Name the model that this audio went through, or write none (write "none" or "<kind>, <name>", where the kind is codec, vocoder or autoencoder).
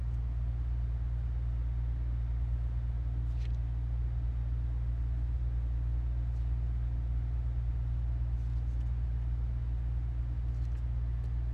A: none